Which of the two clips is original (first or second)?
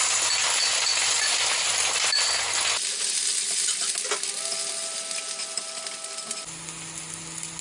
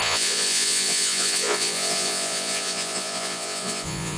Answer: first